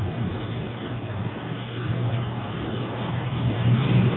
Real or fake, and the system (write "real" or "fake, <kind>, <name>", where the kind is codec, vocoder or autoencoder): fake, codec, DAC